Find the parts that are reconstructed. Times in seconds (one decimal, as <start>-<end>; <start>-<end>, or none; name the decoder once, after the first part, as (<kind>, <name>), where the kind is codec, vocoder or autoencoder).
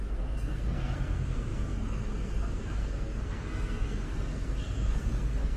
0.0-5.6 (codec, SNAC)